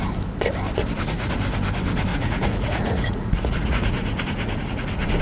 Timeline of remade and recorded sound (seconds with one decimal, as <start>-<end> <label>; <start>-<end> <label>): 0.0-0.8 recorded; 0.8-1.3 remade; 1.3-2.1 recorded; 2.1-5.2 remade